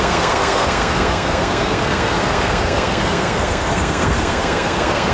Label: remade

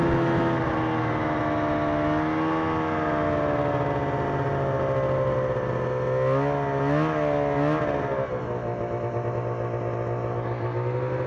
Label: recorded